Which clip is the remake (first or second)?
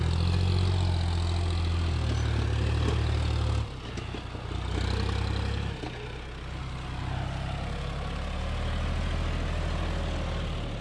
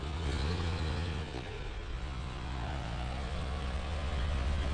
second